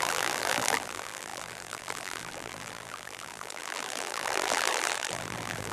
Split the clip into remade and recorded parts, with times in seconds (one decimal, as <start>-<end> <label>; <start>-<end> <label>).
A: 0.0-5.7 remade

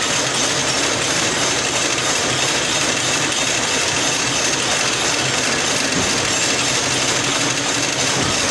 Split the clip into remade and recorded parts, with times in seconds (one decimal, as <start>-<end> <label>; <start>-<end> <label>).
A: 0.0-0.6 recorded; 0.6-4.2 remade; 4.2-8.5 recorded